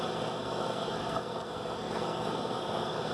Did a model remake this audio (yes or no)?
yes